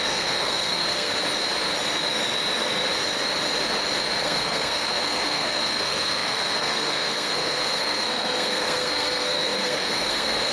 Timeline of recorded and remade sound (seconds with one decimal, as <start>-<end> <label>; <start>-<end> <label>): 0.0-1.1 remade; 1.1-4.2 recorded; 4.2-10.5 remade